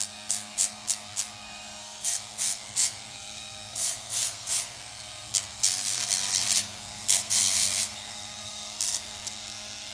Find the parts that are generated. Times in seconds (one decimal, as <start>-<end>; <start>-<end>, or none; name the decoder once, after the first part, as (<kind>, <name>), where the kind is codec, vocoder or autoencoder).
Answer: 0.0-9.9 (codec, SNAC)